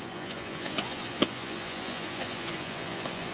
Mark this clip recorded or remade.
remade